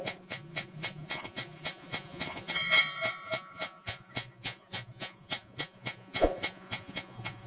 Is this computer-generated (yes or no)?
yes